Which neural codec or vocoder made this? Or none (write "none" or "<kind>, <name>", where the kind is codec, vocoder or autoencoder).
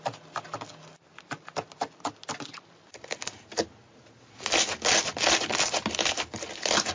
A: none